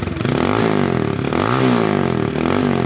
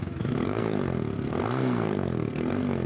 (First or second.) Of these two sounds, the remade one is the second